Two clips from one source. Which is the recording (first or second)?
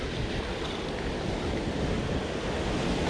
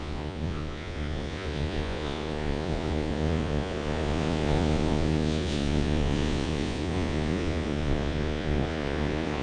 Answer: first